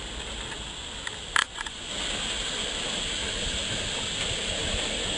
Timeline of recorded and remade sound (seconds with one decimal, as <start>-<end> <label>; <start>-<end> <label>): 0.0-1.4 recorded; 1.4-1.9 remade; 1.9-5.2 recorded